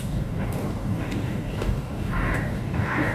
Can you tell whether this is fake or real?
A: fake